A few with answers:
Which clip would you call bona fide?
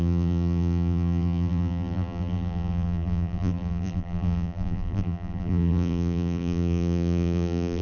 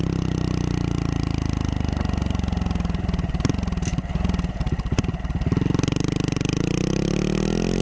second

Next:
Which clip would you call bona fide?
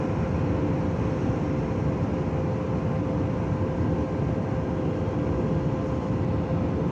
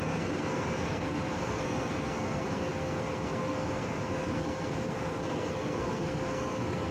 first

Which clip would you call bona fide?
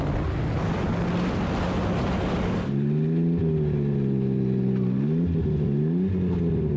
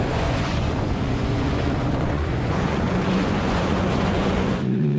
first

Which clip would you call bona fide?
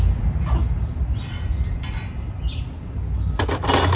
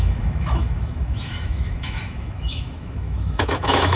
first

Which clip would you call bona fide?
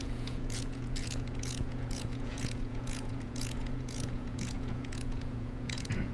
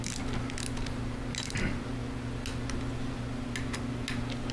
second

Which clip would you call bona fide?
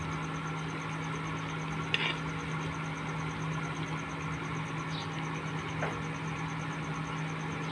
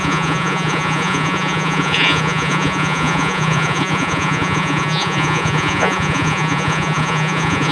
first